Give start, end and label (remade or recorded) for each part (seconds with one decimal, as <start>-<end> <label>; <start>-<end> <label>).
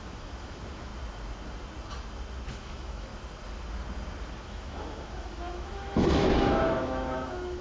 0.0-0.9 remade; 0.9-2.6 recorded; 2.6-3.1 remade; 3.1-4.4 recorded; 4.4-7.6 remade